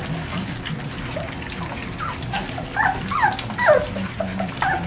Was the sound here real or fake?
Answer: real